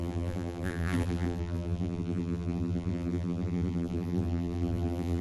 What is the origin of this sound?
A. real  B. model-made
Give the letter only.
B